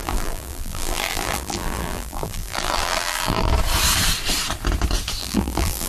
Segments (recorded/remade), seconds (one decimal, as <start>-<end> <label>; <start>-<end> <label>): 0.0-3.5 remade; 3.5-5.2 recorded; 5.2-5.9 remade